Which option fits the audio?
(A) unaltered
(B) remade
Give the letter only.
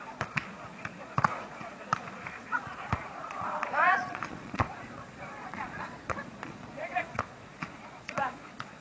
B